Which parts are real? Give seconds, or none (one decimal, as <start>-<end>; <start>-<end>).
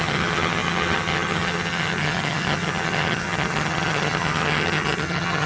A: none